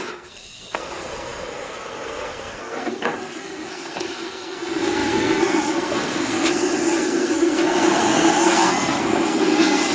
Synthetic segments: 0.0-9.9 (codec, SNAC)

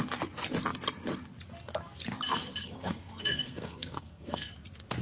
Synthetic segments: 2.6-4.5 (codec, SNAC)